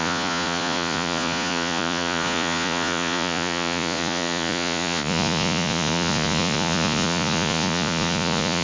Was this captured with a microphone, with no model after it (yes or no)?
no